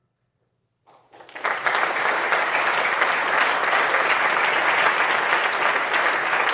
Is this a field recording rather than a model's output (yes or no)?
yes